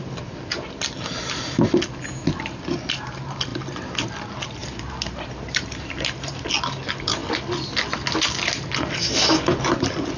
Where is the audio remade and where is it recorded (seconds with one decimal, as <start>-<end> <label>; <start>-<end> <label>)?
0.0-4.6 recorded; 4.6-6.5 remade; 6.5-10.2 recorded